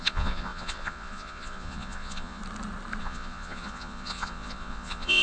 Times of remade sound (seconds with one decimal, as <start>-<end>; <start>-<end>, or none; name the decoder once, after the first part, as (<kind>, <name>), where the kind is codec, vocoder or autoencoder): 0.0-2.4 (vocoder, Vocos); 3.0-5.2